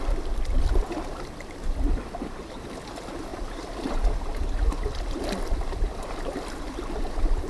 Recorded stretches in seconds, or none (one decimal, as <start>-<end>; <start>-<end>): 0.0-7.5